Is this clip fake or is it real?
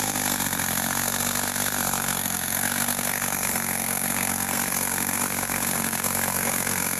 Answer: fake